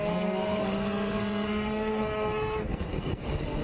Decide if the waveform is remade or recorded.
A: remade